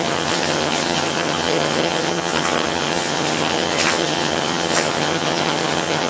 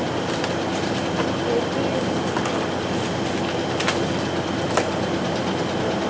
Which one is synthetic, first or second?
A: first